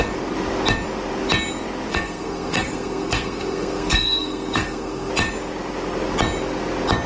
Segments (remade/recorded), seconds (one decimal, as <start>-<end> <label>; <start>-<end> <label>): 0.0-1.9 recorded; 1.9-5.1 remade; 5.1-7.1 recorded